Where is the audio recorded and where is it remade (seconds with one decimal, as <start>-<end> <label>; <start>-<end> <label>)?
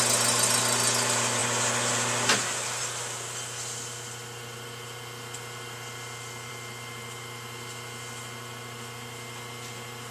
0.0-10.1 recorded